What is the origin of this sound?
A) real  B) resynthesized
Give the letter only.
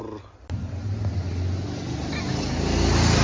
A